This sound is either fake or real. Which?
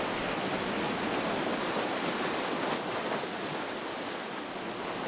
real